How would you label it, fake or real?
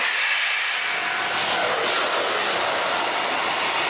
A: real